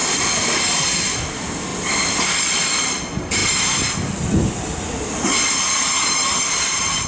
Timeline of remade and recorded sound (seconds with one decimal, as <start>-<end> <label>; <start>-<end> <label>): 0.0-0.6 remade; 0.6-1.7 recorded; 1.7-3.0 remade; 3.0-7.1 recorded